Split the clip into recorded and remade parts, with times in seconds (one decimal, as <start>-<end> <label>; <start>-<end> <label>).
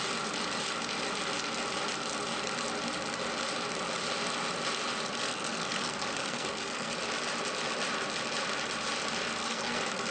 0.0-5.2 recorded; 5.2-6.9 remade; 6.9-9.4 recorded; 9.4-10.1 remade